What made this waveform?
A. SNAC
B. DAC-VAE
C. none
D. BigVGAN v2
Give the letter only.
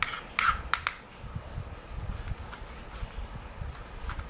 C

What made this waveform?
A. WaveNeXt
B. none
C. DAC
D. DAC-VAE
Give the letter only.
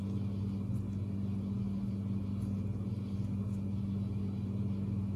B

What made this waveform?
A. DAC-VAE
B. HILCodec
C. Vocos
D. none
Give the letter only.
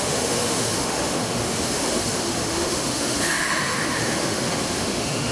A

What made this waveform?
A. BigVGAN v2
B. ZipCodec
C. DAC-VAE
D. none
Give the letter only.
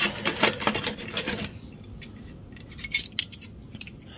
D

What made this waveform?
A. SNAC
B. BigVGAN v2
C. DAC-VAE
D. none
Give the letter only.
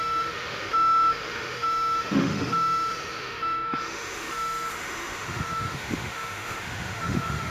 C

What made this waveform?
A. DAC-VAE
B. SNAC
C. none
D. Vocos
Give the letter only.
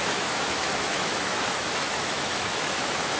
A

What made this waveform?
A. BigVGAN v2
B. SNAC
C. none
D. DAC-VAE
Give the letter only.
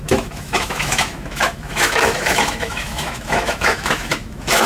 D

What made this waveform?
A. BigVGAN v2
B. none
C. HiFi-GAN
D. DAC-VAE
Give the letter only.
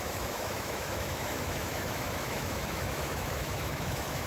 D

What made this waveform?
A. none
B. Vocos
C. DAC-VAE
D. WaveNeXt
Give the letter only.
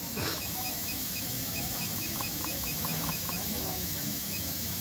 C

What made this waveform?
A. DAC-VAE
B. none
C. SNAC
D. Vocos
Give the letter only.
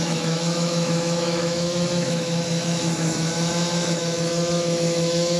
A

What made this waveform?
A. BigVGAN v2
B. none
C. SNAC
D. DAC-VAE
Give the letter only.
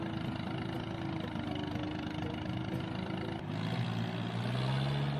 B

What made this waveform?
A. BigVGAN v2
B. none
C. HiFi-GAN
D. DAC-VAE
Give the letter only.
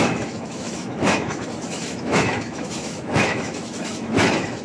D